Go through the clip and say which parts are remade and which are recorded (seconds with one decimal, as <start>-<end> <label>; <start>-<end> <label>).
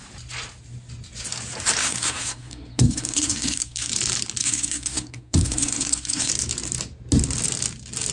0.0-1.8 recorded; 1.8-3.9 remade; 3.9-4.4 recorded; 4.4-6.3 remade; 6.3-8.1 recorded